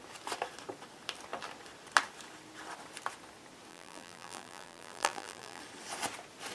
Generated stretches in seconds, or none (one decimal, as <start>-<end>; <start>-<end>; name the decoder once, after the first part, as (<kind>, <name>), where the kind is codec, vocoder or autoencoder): 3.7-5.6 (vocoder, BigVGAN v2)